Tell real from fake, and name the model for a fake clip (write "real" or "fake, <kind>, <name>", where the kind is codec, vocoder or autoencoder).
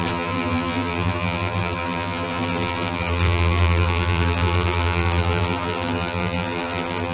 fake, vocoder, BigVGAN v2